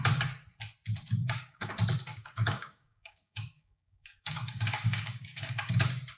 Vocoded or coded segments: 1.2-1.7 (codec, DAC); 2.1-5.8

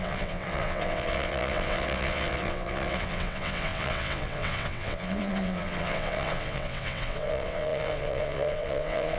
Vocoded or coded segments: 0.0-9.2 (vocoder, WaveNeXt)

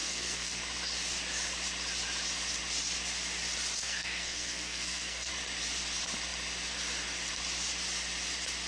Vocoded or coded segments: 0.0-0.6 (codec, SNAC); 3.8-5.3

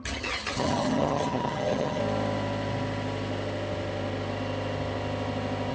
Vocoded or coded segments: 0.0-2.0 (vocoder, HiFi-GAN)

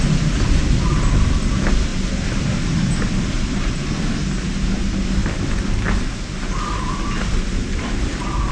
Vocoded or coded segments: none

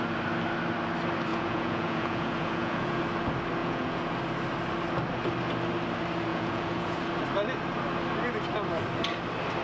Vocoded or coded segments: 1.3-3.0 (vocoder, Vocos); 3.6-4.1; 6.3-7.1